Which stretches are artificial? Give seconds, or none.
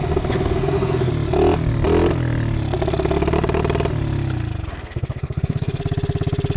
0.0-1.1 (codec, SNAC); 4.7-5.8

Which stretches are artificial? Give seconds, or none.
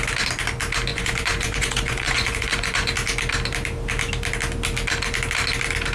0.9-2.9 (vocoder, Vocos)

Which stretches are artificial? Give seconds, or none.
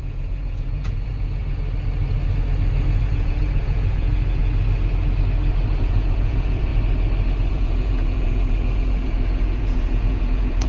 0.0-1.4 (vocoder, Vocos); 3.0-4.4; 5.8-6.7; 7.5-10.7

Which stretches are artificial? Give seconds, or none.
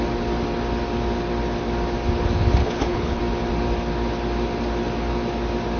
2.6-3.2 (codec, HILCodec)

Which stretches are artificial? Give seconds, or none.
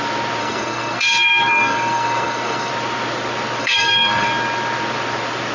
0.4-2.7 (codec, SNAC); 3.6-4.3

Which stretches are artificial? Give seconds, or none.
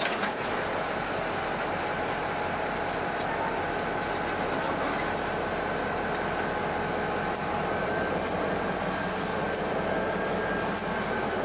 none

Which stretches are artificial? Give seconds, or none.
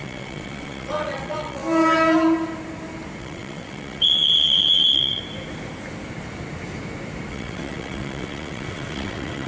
0.0-1.6 (vocoder, WaveNeXt); 3.2-5.2; 7.3-9.5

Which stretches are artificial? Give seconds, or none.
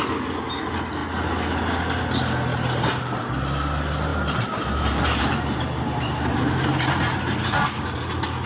2.5-3.0 (vocoder, BigVGAN v2); 4.1-7.2